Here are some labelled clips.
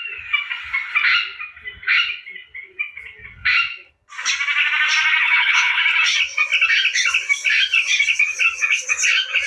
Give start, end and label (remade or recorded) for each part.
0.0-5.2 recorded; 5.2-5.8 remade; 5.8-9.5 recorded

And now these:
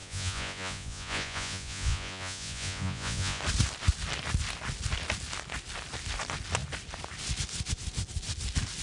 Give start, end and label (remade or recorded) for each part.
0.0-3.4 remade; 3.4-8.8 recorded

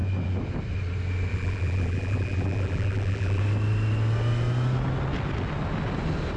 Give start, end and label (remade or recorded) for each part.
0.0-1.3 recorded; 1.3-3.4 remade; 3.4-6.4 recorded